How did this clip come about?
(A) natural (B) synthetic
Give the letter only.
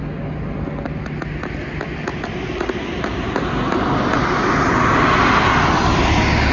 A